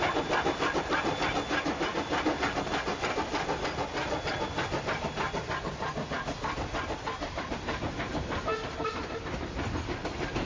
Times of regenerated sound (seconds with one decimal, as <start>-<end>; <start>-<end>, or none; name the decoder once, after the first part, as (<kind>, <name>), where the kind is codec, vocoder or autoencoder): none